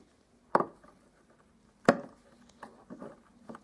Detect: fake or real real